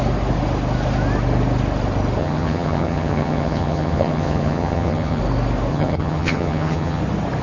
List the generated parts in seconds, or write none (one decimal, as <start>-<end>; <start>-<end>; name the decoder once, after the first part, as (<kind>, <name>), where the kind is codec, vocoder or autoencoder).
2.2-5.2 (vocoder, HiFi-GAN); 5.7-7.0